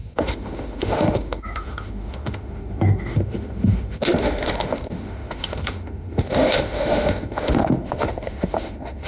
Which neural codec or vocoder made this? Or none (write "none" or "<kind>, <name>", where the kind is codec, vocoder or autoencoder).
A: autoencoder, DAC-VAE